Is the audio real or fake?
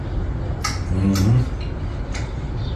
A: real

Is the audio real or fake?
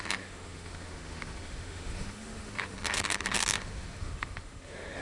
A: fake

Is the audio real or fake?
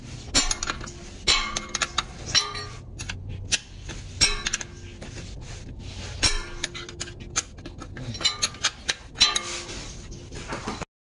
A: real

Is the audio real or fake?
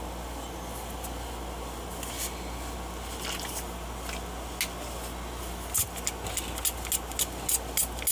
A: real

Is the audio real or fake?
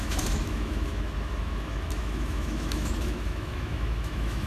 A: fake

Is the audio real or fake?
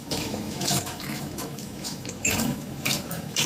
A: fake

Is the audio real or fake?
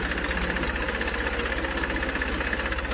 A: real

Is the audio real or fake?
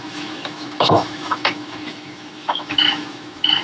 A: fake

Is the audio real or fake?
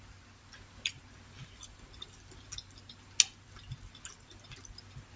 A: real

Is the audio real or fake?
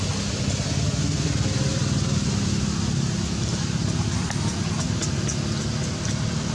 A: real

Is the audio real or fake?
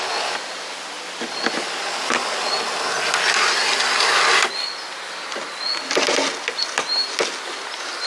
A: real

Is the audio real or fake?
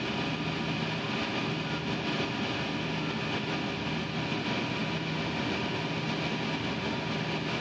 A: real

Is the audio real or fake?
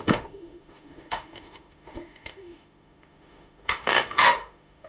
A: fake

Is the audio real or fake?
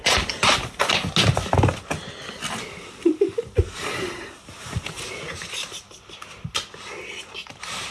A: real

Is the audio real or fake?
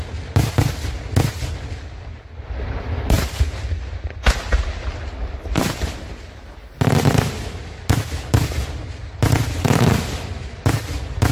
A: real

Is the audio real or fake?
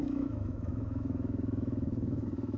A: fake